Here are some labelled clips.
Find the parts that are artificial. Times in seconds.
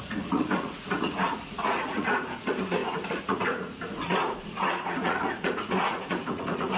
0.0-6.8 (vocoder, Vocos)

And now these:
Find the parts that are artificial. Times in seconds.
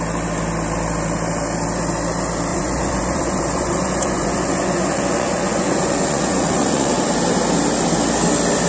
2.5-7.0 (vocoder, Vocos)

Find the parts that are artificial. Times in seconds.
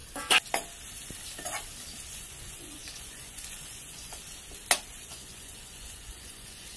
2.1-4.2 (vocoder, Vocos); 4.9-6.8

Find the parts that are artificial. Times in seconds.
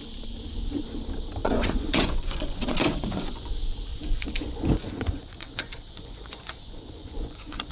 1.4-3.5 (vocoder, Vocos); 3.9-7.7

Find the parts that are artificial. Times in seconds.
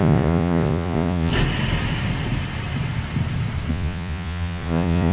0.0-1.3 (vocoder, Vocos); 3.7-5.1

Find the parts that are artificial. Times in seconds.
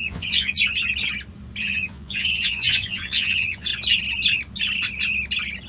0.0-0.6 (vocoder, Vocos); 1.6-3.7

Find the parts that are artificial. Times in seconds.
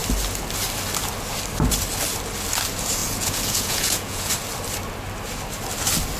3.0-4.3 (vocoder, Vocos)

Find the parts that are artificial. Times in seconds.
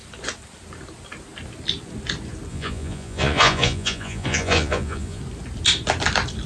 2.5-5.2 (vocoder, Vocos)